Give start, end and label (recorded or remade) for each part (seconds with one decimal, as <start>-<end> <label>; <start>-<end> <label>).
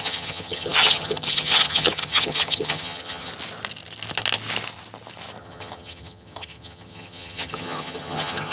0.0-3.3 remade; 3.3-5.4 recorded; 5.4-8.5 remade